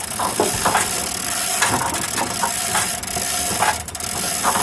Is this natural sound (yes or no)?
yes